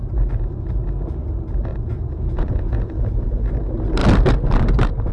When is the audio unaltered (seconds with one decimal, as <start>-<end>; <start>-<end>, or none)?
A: 0.0-1.7; 3.5-5.1